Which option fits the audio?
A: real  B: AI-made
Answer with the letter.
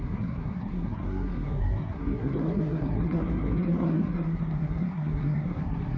B